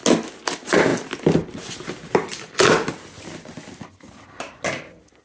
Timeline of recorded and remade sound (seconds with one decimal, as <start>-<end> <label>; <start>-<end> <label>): 0.0-5.2 recorded